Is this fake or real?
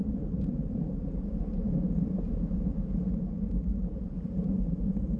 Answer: fake